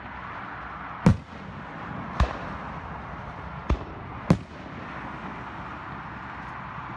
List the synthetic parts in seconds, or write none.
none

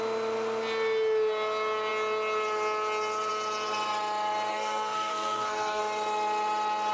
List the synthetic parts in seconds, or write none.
4.5-5.8

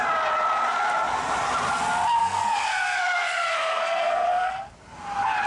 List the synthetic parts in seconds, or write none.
2.2-4.5

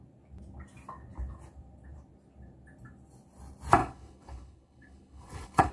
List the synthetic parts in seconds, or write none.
3.8-5.7